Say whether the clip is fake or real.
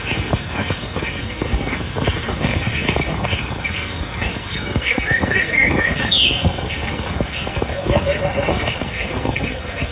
fake